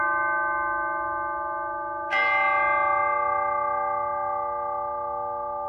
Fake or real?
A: real